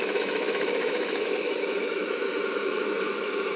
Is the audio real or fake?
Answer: fake